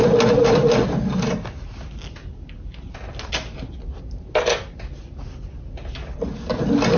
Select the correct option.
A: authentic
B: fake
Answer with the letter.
A